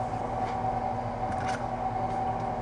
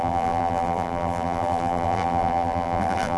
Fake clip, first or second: second